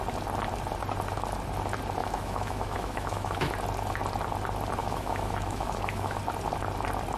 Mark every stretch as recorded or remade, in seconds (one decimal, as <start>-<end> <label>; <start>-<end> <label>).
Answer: 0.0-2.0 recorded; 2.0-3.5 remade; 3.5-4.8 recorded; 4.8-6.2 remade; 6.2-7.2 recorded